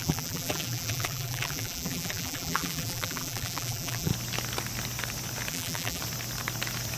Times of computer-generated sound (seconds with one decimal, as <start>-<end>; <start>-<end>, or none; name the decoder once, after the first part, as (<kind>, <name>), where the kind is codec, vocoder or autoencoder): 0.0-4.1 (vocoder, BigVGAN v2); 5.5-6.0